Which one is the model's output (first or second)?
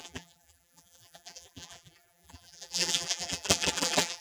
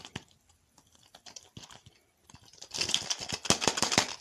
first